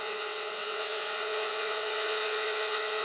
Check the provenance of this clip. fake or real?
fake